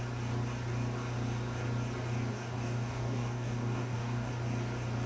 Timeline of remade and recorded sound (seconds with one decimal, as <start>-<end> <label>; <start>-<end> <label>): 0.0-2.3 recorded; 2.3-4.3 remade; 4.3-5.1 recorded